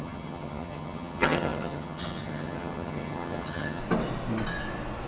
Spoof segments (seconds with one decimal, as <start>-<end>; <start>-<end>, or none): 0.0-3.8